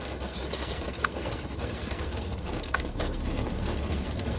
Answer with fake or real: fake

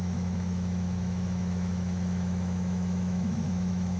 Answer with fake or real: fake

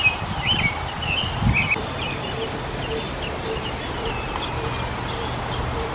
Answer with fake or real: real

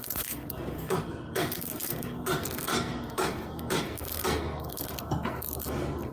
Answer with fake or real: fake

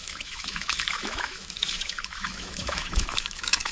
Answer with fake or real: fake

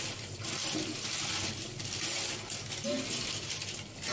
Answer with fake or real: real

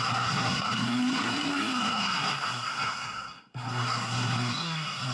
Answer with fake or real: fake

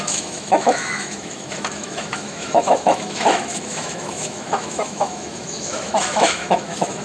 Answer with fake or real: fake